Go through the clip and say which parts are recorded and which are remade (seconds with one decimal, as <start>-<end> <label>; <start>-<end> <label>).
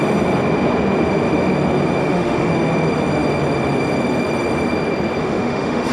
0.0-2.0 recorded; 2.0-2.5 remade; 2.5-5.2 recorded; 5.2-5.9 remade